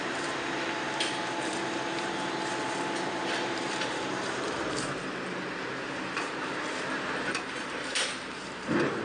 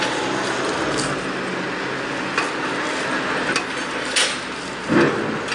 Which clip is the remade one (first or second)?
first